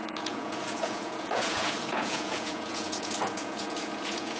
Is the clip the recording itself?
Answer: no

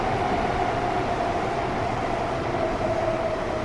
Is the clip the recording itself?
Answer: yes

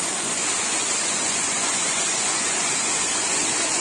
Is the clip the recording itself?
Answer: no